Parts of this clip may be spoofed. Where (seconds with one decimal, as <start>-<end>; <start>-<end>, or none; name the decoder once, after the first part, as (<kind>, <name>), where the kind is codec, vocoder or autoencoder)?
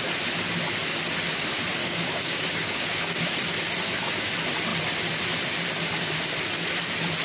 1.8-3.2 (codec, DAC)